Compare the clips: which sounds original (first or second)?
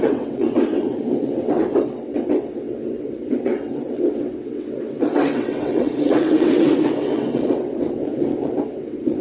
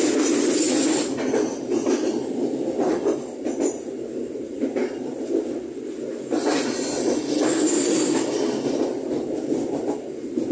second